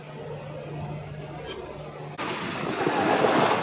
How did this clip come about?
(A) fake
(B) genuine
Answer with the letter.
B